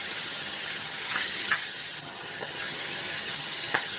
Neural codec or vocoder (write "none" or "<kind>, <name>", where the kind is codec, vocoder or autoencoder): vocoder, HiFi-GAN